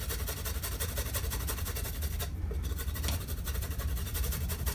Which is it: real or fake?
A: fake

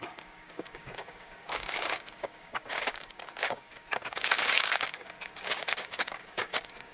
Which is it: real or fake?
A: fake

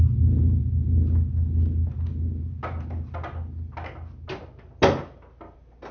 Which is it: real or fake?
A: real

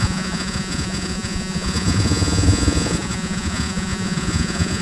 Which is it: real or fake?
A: fake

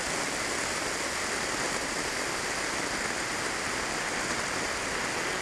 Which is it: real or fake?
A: real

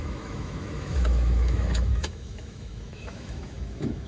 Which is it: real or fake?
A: fake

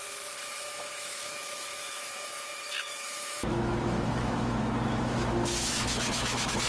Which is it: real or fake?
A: fake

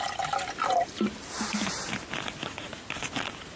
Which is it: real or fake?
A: real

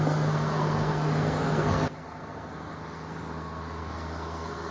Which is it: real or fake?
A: fake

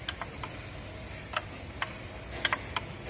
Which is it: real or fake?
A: real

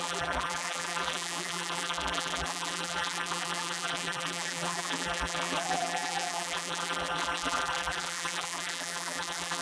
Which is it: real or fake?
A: fake